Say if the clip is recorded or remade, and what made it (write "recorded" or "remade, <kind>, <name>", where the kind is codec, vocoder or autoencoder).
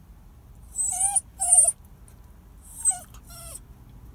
recorded